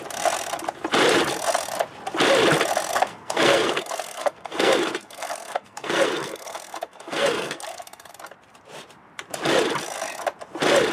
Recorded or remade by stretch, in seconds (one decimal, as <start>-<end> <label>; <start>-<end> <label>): 0.0-2.9 recorded; 2.9-8.1 remade; 8.1-10.9 recorded